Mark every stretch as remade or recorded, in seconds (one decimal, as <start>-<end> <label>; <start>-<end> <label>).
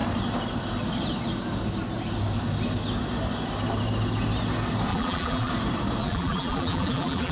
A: 0.0-4.9 recorded; 4.9-5.5 remade; 5.5-6.0 recorded; 6.0-7.3 remade